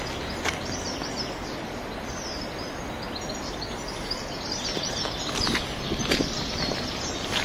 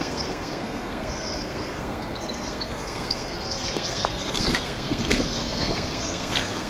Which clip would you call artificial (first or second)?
second